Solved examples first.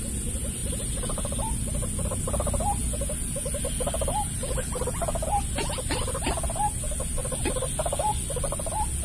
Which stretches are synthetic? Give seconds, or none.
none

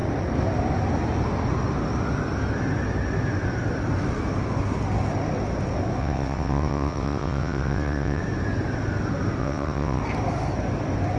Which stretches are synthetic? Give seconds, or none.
6.0-8.2 (vocoder, WaveNeXt); 9.4-10.0

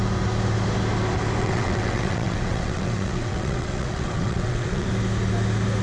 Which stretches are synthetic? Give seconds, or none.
1.4-4.9 (vocoder, WaveNeXt)

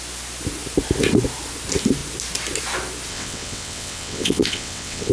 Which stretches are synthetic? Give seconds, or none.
3.1-5.1 (vocoder, WaveNeXt)

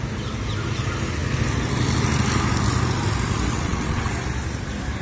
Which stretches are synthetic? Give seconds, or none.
3.5-4.1 (vocoder, WaveNeXt)

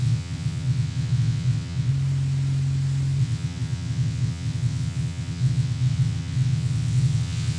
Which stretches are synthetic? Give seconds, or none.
0.0-1.9 (vocoder, WaveNeXt); 3.2-7.6

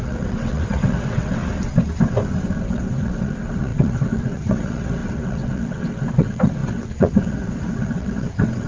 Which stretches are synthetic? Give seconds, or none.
0.0-1.4 (vocoder, WaveNeXt); 2.6-8.7

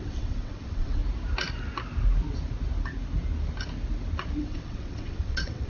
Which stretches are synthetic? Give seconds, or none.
0.0-1.0 (vocoder, WaveNeXt); 4.4-5.7